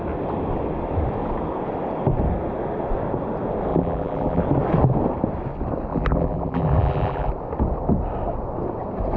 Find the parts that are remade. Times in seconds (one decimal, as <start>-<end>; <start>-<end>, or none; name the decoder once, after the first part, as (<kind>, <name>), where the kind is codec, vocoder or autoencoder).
3.7-4.4 (vocoder, BigVGAN v2); 5.9-7.3